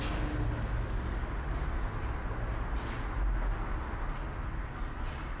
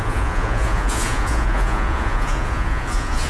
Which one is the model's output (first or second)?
second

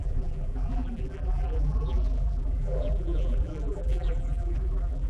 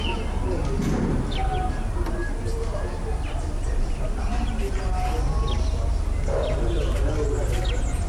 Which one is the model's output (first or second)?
first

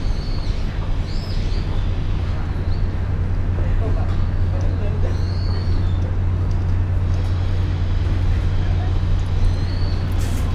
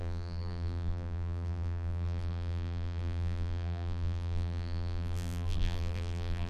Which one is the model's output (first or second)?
second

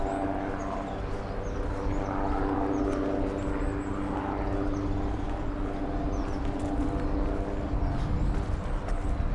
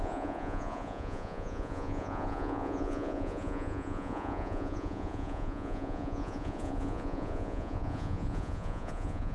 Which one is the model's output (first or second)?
second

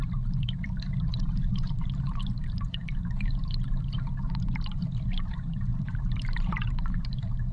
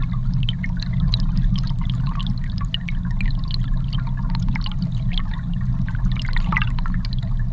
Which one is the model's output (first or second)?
first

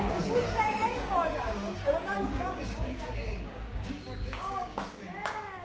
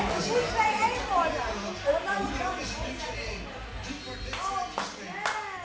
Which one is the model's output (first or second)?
first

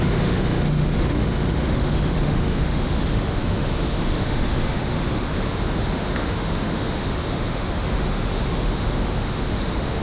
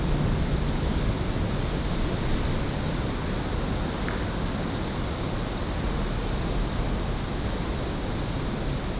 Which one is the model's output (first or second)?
first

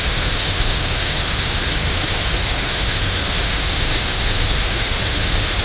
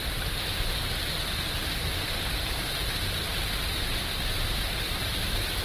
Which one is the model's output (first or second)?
first